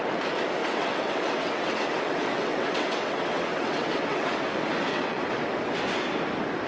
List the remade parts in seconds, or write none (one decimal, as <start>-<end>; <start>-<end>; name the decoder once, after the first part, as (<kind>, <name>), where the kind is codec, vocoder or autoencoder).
0.6-4.4 (vocoder, WaveNeXt); 4.9-5.8